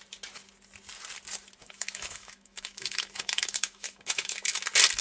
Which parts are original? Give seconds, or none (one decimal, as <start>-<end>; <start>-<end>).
0.0-1.6; 4.6-5.0